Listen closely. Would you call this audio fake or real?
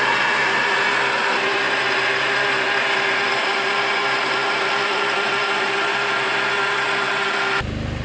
real